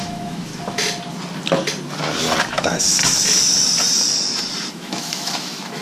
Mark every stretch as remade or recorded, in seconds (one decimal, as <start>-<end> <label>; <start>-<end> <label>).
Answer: 0.0-0.5 remade; 0.5-2.5 recorded; 2.5-3.0 remade; 3.0-4.7 recorded; 4.7-5.8 remade